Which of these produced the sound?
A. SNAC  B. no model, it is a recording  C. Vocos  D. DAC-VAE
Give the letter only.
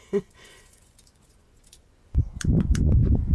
C